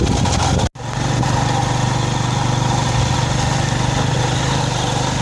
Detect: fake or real real